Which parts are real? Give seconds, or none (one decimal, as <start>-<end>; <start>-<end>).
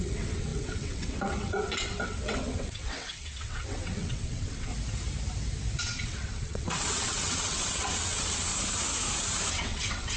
4.7-5.8; 8.5-9.5